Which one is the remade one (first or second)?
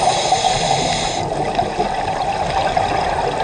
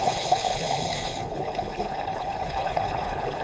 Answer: second